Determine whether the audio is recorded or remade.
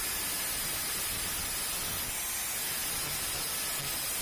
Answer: recorded